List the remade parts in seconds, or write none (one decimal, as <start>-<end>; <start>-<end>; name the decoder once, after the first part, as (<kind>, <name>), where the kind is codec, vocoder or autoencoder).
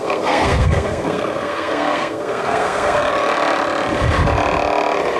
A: 0.0-3.1 (codec, SNAC)